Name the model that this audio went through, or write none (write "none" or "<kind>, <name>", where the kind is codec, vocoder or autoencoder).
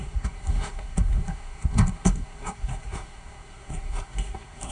codec, SNAC